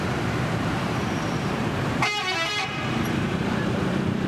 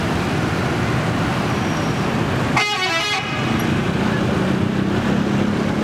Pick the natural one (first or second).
second